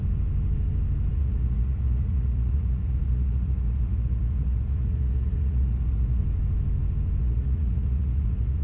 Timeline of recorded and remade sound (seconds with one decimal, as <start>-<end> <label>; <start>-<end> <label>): 0.0-1.1 recorded; 1.1-6.2 remade; 6.2-7.2 recorded; 7.2-8.6 remade